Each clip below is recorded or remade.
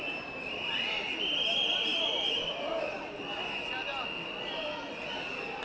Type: recorded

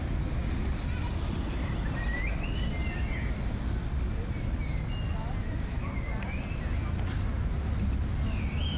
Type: recorded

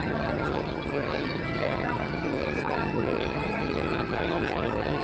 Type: remade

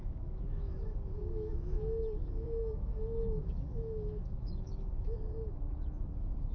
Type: remade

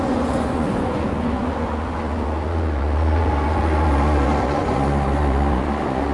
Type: remade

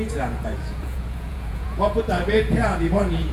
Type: remade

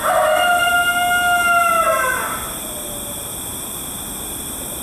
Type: recorded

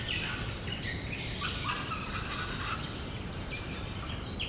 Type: remade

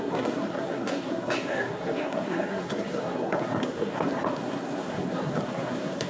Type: remade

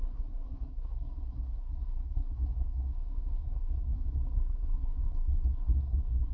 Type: remade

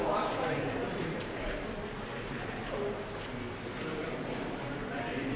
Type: recorded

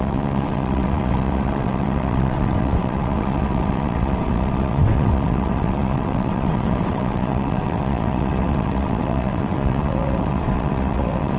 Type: remade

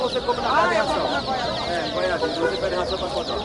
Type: remade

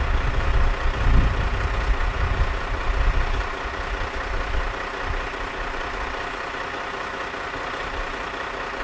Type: recorded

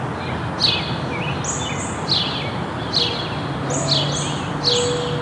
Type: recorded